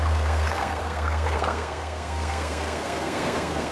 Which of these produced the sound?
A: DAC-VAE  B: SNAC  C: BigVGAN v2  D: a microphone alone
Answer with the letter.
B